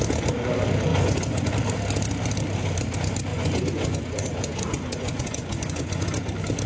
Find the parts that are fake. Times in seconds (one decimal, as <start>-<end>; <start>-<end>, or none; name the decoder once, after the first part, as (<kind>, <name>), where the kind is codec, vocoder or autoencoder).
0.9-1.5 (vocoder, Vocos); 3.3-6.3